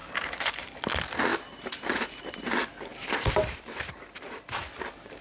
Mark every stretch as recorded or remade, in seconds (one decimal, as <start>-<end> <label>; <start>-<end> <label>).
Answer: 0.0-1.3 recorded; 1.3-2.4 remade; 2.4-2.9 recorded; 2.9-5.2 remade